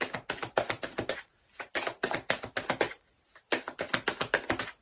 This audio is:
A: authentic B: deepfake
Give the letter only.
A